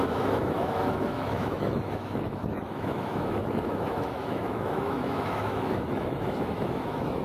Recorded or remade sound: remade